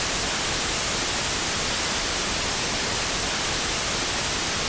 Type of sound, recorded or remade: recorded